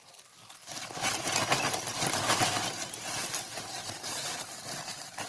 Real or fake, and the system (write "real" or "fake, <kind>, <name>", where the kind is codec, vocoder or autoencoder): real